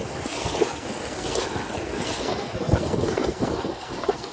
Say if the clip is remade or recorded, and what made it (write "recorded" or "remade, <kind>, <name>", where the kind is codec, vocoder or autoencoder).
remade, codec, SNAC